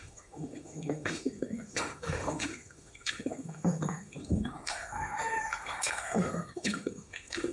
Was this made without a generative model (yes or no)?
no